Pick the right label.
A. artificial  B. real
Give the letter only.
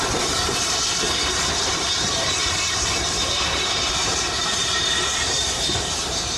A